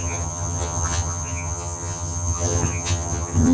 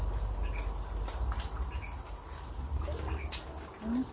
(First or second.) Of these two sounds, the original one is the second